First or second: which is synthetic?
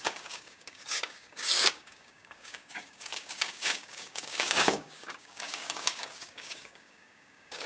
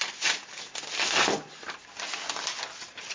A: first